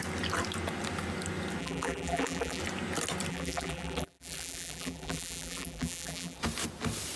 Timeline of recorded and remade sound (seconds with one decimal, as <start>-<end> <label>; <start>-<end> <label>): 0.0-1.6 recorded; 1.6-2.6 remade; 2.6-3.3 recorded; 3.3-6.4 remade; 6.4-7.2 recorded